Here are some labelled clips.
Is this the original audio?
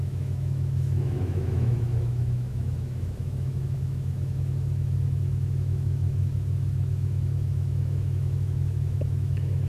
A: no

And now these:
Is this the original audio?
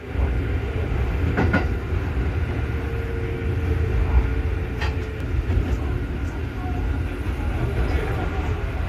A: yes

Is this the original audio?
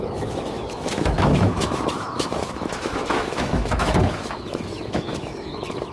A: no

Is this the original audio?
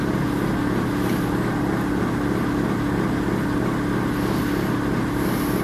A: yes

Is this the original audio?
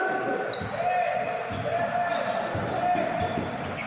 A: yes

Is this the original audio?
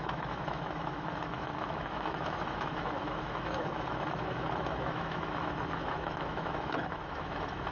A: no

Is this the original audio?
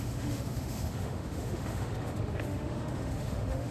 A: no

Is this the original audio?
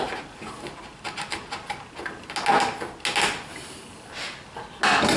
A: yes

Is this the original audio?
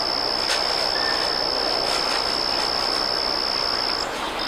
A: yes